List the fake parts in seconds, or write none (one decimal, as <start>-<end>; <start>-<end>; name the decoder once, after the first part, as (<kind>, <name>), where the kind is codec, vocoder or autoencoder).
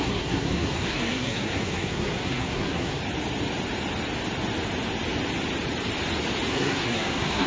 0.0-3.0 (codec, SNAC); 6.5-7.5